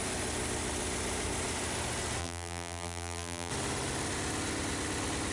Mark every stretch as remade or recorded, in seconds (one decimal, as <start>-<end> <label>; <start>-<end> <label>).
0.0-2.2 recorded; 2.2-3.5 remade; 3.5-5.3 recorded